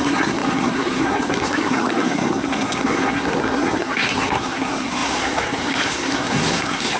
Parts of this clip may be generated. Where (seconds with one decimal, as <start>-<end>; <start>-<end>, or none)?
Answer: 0.0-7.0